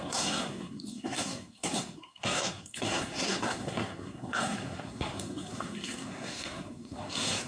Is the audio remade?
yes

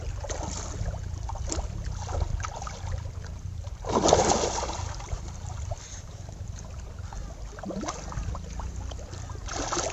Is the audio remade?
no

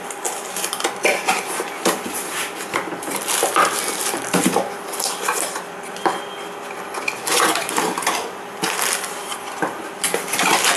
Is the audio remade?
no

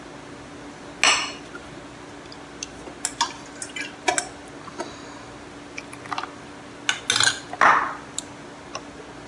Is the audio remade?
no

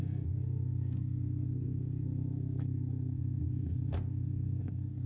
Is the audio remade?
yes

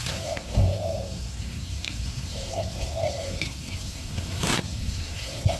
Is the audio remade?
yes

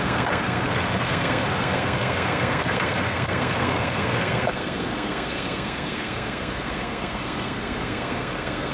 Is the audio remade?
yes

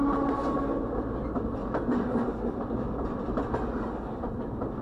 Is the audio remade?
no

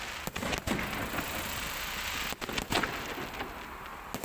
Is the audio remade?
no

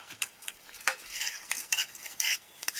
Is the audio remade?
yes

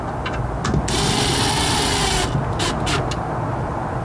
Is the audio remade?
no